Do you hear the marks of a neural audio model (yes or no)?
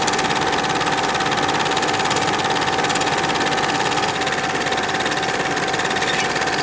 no